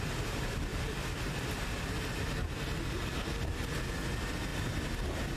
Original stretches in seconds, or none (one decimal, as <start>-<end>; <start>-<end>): 0.0-5.4